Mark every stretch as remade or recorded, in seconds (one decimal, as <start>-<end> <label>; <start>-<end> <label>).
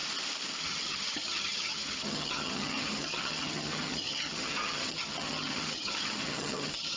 0.0-0.6 recorded; 0.6-7.0 remade